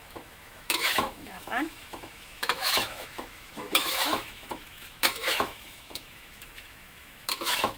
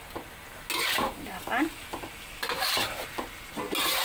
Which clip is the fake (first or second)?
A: first